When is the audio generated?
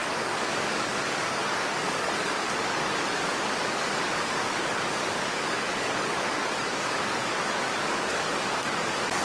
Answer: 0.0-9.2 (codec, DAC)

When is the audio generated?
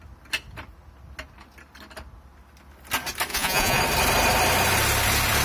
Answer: 3.3-3.8 (vocoder, Vocos)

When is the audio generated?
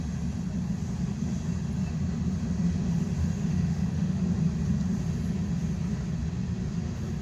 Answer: 3.2-4.2 (autoencoder, DAC-VAE)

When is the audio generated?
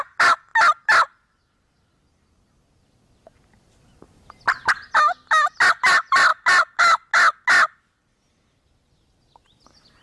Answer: none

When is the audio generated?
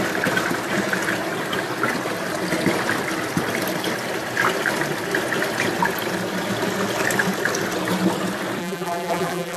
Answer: 8.6-9.6 (vocoder, BigVGAN v2)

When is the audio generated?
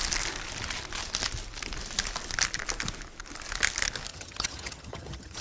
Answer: 4.1-5.4 (vocoder, HiFi-GAN)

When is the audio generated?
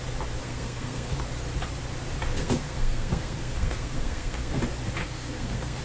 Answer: 0.4-1.2 (codec, SNAC); 2.3-4.6; 5.0-5.8